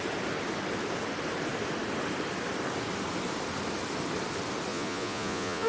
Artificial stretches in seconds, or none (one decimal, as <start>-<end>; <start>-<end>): 4.7-5.7